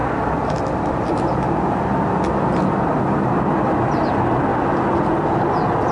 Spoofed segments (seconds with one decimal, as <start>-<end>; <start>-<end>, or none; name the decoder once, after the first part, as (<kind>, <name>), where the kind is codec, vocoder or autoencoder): none

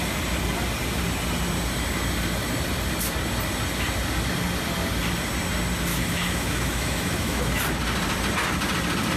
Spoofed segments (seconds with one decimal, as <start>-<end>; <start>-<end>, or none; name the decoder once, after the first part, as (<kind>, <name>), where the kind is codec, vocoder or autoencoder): 5.9-7.6 (autoencoder, DAC-VAE)

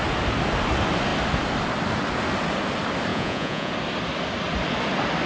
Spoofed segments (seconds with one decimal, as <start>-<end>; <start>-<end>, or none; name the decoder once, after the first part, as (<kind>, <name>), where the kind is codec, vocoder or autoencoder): 3.1-3.7 (vocoder, Vocos)

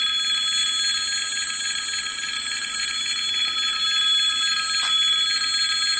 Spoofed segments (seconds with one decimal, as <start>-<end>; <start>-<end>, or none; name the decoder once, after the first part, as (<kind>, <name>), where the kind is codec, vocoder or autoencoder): 2.1-2.8 (vocoder, BigVGAN v2)